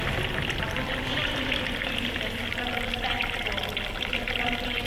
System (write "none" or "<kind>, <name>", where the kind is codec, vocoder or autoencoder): none